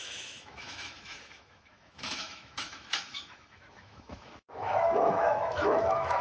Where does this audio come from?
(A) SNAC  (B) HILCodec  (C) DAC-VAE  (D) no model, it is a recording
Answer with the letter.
C